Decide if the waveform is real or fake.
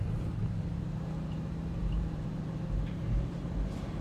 fake